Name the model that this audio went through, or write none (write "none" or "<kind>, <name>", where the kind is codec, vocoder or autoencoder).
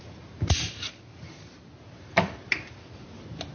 none